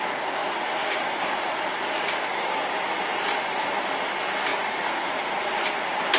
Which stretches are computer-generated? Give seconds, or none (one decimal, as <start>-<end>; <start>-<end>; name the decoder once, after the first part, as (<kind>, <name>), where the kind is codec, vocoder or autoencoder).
0.4-1.1 (vocoder, Vocos); 4.5-5.6

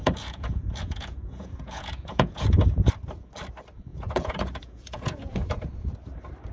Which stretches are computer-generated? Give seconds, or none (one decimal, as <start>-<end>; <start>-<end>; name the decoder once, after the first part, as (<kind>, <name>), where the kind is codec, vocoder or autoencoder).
0.0-2.9 (vocoder, Vocos); 3.9-5.7

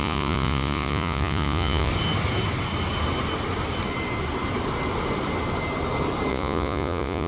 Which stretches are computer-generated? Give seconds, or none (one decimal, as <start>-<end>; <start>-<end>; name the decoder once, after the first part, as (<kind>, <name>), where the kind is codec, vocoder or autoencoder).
0.0-1.9 (vocoder, Vocos); 6.3-7.3

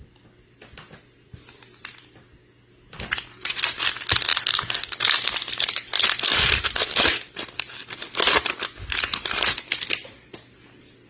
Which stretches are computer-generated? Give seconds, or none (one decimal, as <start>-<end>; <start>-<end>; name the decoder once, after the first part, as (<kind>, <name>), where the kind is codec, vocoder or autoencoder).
none

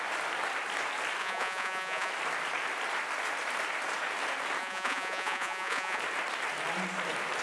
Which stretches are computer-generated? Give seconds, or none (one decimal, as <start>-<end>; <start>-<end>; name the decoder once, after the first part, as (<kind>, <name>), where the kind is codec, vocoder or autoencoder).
1.2-2.1 (vocoder, Vocos); 4.6-6.0